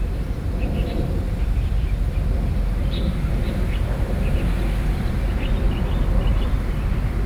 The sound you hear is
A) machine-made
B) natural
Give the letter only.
A